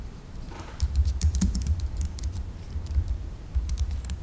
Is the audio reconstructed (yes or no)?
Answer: yes